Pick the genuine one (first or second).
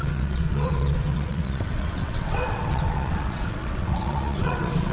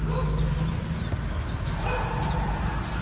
second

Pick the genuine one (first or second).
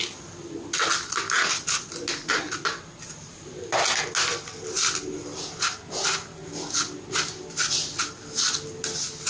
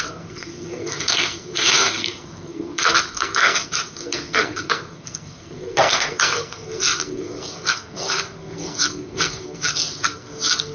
first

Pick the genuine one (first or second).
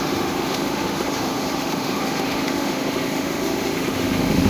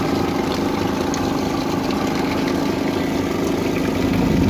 second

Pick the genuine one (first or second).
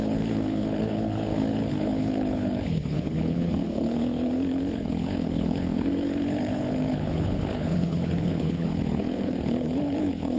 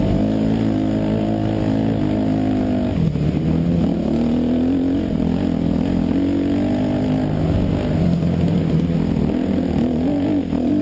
second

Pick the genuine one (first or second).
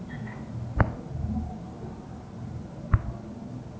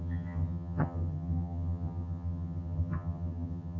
first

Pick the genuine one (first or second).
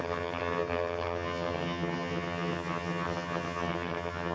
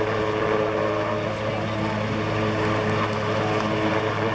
second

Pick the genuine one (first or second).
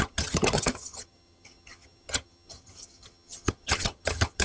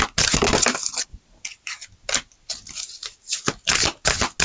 second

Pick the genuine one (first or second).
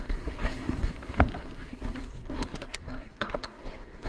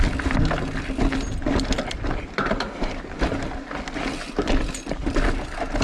second